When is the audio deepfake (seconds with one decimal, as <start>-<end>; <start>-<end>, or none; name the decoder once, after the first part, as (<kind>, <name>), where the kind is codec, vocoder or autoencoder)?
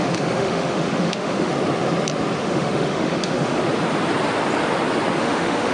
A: 0.0-1.5 (autoencoder, DAC-VAE); 2.4-3.6; 5.2-5.7